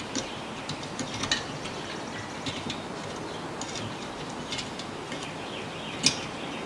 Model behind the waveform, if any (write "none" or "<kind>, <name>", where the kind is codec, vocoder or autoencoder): none